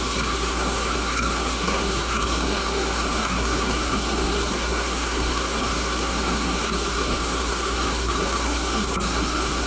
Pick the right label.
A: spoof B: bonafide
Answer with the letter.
A